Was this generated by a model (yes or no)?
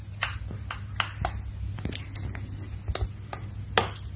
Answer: no